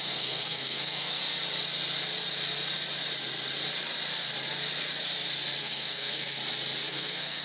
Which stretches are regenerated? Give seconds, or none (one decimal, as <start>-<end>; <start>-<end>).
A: 0.0-1.2; 5.6-6.4; 6.9-7.4